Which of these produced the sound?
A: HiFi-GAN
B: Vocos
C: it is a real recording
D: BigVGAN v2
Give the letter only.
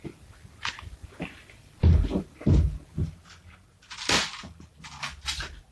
C